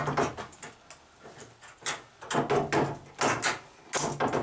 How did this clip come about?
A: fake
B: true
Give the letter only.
B